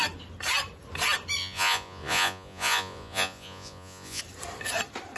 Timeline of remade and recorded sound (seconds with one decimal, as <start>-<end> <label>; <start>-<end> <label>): 0.0-1.4 recorded; 1.4-4.2 remade; 4.2-5.2 recorded